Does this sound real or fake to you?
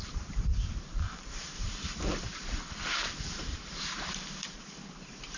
fake